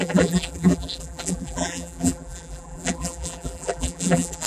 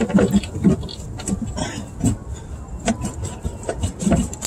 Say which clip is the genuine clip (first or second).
second